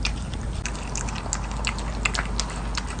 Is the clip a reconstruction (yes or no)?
no